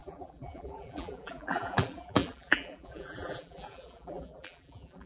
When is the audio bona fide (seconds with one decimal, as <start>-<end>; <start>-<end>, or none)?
none